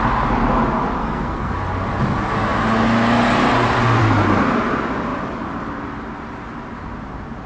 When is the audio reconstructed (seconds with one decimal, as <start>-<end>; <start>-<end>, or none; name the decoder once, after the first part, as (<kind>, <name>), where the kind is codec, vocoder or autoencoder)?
1.0-1.6 (codec, SNAC)